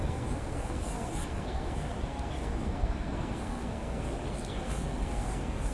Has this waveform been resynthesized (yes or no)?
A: yes